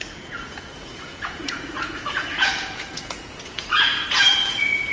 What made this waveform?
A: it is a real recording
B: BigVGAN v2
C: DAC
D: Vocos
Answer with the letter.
D